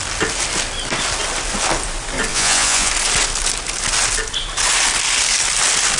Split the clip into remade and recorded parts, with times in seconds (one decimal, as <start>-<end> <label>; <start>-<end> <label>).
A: 0.0-2.3 recorded; 2.3-2.9 remade; 2.9-6.0 recorded